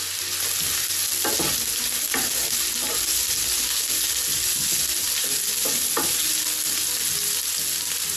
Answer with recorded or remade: recorded